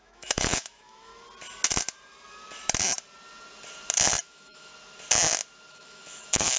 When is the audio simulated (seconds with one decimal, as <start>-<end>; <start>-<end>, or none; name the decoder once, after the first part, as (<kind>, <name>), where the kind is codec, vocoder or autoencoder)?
0.0-1.1 (autoencoder, DAC-VAE); 4.2-4.7; 5.7-6.6